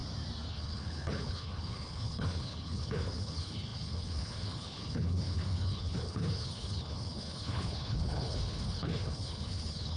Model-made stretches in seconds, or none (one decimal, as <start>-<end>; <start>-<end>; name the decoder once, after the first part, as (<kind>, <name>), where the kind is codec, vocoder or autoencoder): 0.5-10.0 (codec, HILCodec)